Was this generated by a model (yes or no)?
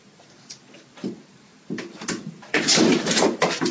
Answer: yes